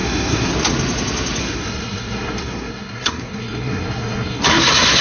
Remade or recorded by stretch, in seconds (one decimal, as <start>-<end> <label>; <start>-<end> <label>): 0.0-0.5 remade; 0.5-1.4 recorded; 1.4-4.4 remade; 4.4-5.0 recorded

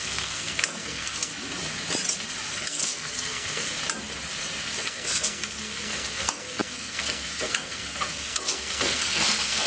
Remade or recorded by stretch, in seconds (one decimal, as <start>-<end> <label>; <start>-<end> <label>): 0.0-1.3 remade; 1.3-2.5 recorded; 2.5-3.8 remade; 3.8-4.8 recorded; 4.8-9.7 remade

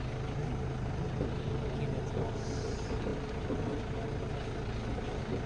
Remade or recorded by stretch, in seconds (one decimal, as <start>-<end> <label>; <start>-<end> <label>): 0.0-5.5 recorded